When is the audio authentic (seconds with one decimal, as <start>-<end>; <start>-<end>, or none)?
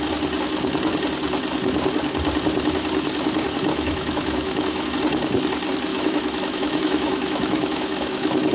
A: 0.0-3.7; 4.9-5.9